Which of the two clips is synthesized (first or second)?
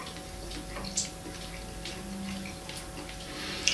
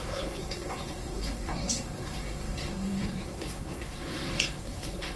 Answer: second